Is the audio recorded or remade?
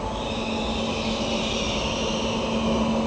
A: recorded